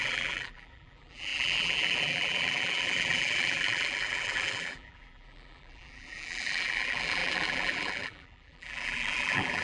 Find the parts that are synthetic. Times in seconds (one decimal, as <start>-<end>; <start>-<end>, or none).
0.0-9.6